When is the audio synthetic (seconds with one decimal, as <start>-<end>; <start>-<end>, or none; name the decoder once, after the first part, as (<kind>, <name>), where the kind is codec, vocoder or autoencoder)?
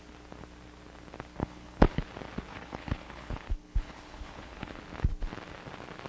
1.4-2.0 (codec, HILCodec); 2.5-4.8